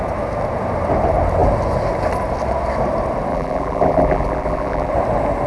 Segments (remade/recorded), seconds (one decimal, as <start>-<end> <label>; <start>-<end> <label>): 0.0-3.3 recorded; 3.3-4.9 remade; 4.9-5.5 recorded